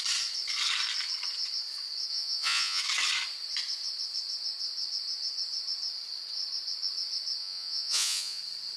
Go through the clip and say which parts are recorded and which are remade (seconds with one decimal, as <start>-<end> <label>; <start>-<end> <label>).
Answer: 0.0-2.1 recorded; 2.1-2.8 remade; 2.8-7.4 recorded; 7.4-8.4 remade; 8.4-8.8 recorded